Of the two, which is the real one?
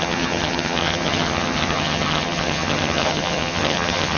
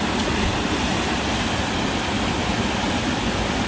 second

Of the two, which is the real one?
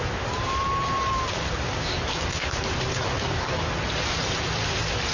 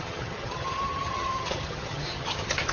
first